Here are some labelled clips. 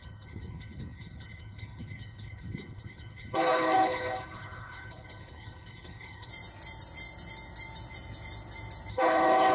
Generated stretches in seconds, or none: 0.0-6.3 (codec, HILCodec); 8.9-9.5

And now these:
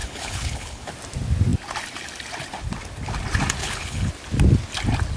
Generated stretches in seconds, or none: 0.0-0.9 (codec, HILCodec); 3.6-4.1